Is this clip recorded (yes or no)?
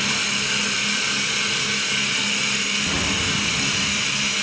yes